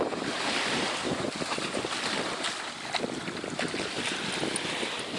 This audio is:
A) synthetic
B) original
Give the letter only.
B